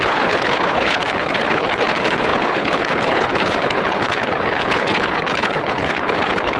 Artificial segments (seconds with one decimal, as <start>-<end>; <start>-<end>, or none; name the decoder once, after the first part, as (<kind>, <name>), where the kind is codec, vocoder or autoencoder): 0.0-6.6 (codec, HILCodec)